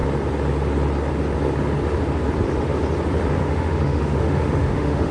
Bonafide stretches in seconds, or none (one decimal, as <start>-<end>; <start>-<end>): 0.0-3.4